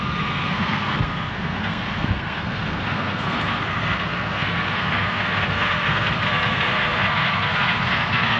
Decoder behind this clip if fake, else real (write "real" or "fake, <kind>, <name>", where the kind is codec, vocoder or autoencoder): fake, codec, SNAC